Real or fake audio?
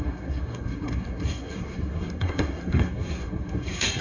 fake